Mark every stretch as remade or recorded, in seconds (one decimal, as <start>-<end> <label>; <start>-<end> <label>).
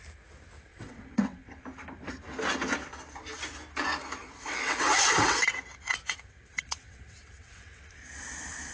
0.0-0.7 recorded; 0.7-1.5 remade; 1.5-4.2 recorded; 4.2-7.8 remade; 7.8-8.7 recorded